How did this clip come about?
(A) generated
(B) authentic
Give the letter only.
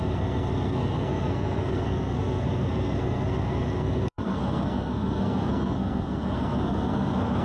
A